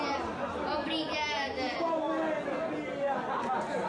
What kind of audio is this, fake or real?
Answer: real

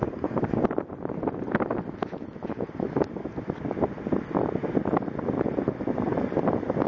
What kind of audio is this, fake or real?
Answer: real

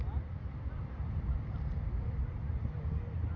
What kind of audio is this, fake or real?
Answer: real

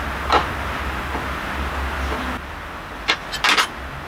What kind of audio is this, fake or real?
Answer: real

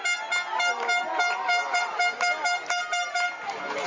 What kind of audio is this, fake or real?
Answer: real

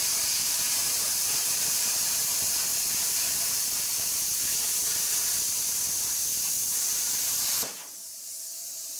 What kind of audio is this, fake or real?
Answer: fake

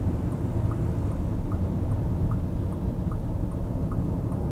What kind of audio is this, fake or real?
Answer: real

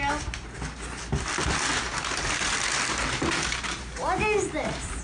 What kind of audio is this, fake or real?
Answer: real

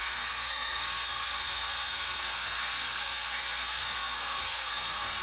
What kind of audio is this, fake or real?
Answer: fake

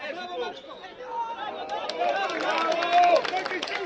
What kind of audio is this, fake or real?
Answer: real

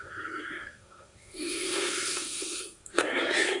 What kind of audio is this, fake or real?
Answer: fake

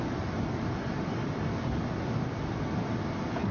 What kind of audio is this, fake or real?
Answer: real